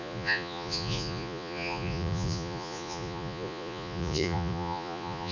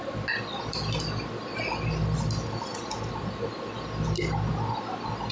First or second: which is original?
second